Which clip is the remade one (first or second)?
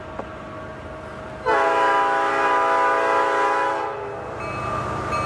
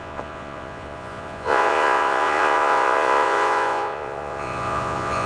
second